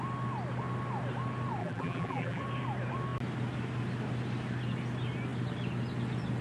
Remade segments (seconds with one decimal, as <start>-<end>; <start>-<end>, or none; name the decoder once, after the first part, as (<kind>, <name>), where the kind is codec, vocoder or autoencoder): 1.6-2.4 (vocoder, BigVGAN v2)